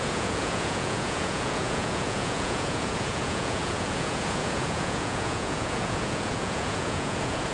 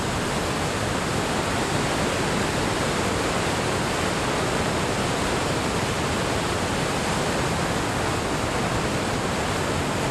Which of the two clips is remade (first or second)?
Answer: first